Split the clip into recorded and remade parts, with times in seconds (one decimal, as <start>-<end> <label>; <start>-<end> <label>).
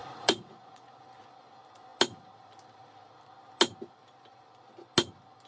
0.0-1.0 remade; 1.0-5.5 recorded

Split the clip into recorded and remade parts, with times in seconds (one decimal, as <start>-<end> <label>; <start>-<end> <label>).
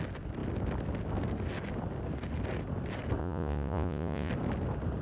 0.0-3.2 recorded; 3.2-4.3 remade; 4.3-5.0 recorded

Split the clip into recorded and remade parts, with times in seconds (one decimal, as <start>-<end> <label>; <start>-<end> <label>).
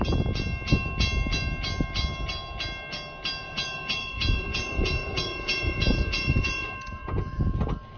0.0-3.4 recorded; 3.4-7.4 remade; 7.4-8.0 recorded